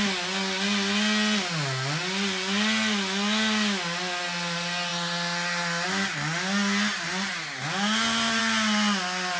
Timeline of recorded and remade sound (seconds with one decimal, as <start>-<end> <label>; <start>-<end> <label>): 0.0-9.4 recorded